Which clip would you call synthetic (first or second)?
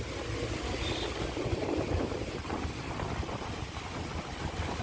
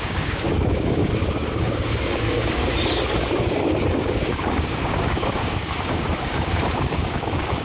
second